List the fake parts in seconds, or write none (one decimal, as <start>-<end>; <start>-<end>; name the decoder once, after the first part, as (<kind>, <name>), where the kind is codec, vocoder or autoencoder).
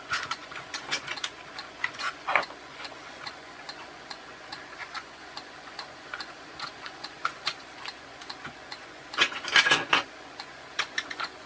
0.0-11.5 (vocoder, Vocos)